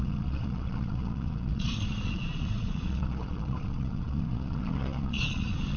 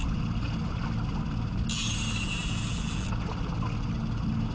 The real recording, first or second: second